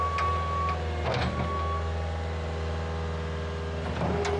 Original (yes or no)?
yes